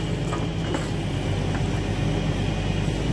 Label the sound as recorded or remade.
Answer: recorded